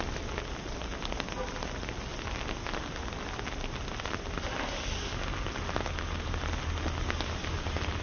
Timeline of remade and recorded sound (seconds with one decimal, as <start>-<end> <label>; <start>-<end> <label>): 0.0-8.0 recorded